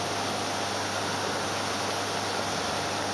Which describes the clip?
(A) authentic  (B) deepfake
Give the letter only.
A